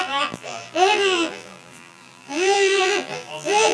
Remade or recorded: remade